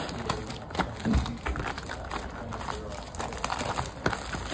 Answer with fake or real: real